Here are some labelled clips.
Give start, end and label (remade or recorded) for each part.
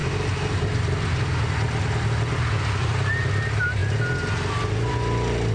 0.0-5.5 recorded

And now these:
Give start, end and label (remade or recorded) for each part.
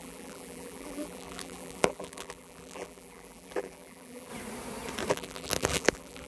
0.0-4.3 remade; 4.3-5.1 recorded; 5.1-6.3 remade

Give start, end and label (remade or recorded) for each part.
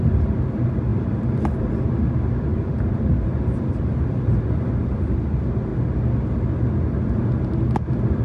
0.0-0.9 recorded; 0.9-1.7 remade; 1.7-2.5 recorded; 2.5-4.3 remade; 4.3-8.2 recorded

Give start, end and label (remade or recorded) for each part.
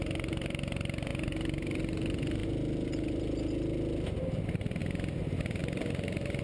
0.0-1.1 remade; 1.1-1.8 recorded; 1.8-2.4 remade; 2.4-4.2 recorded; 4.2-4.8 remade; 4.8-5.6 recorded; 5.6-6.4 remade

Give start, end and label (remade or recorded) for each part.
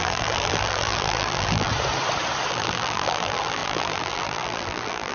0.0-1.7 remade; 1.7-2.5 recorded; 2.5-5.1 remade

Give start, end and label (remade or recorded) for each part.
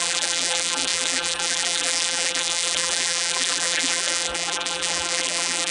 0.0-5.7 remade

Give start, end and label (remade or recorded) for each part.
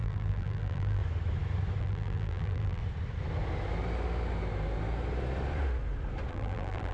0.0-1.0 remade; 1.0-1.8 recorded; 1.8-2.8 remade; 2.8-6.3 recorded; 6.3-6.9 remade